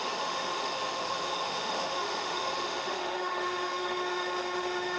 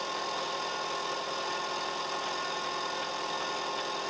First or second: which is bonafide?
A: second